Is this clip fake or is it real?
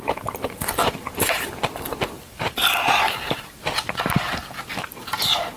fake